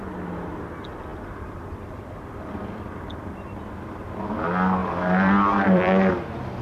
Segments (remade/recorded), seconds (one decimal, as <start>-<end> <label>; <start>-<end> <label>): 0.0-1.1 recorded; 1.1-4.2 remade; 4.2-4.8 recorded; 4.8-6.1 remade; 6.1-6.6 recorded